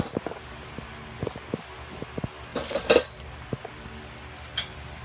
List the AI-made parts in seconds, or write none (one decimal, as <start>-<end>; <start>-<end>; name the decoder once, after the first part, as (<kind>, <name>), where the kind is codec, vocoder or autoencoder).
none